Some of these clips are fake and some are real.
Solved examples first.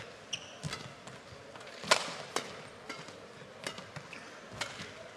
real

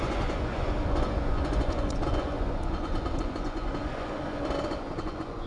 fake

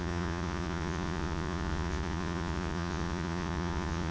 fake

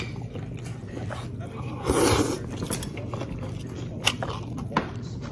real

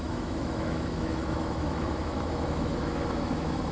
fake